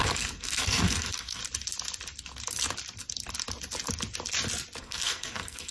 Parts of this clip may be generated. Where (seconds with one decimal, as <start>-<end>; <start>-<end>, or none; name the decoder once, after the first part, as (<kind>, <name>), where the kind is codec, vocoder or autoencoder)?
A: 0.0-1.4 (codec, SNAC); 4.8-5.7